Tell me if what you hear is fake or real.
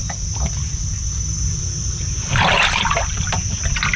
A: real